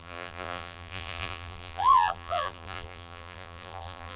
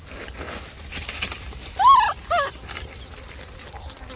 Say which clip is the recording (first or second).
second